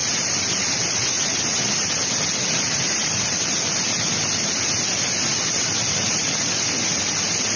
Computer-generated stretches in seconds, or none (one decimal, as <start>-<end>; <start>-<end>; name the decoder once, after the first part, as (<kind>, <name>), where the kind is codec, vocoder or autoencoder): 0.0-4.6 (vocoder, BigVGAN v2); 5.3-6.2